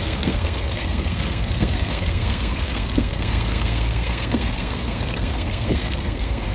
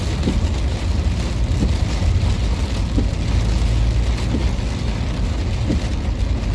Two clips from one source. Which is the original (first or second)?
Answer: second